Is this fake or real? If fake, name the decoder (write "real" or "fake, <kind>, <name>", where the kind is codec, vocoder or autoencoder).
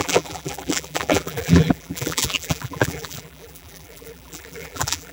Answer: fake, vocoder, BigVGAN v2